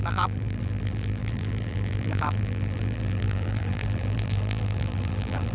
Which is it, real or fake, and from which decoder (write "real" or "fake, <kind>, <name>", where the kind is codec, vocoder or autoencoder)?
fake, vocoder, BigVGAN v2